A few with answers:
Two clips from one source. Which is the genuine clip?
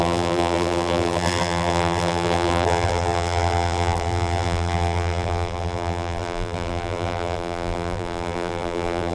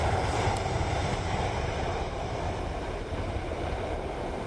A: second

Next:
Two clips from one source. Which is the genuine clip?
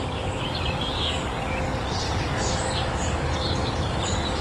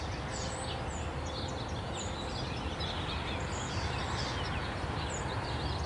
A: second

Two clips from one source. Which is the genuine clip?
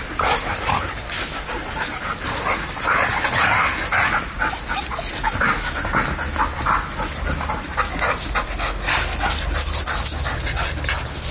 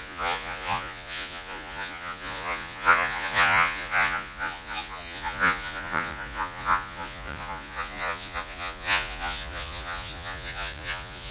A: first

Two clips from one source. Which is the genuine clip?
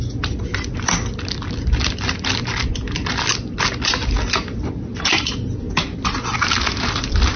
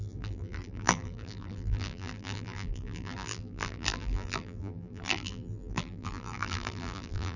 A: first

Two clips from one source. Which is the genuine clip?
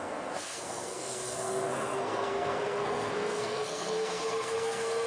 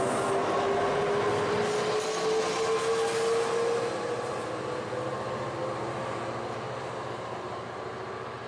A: second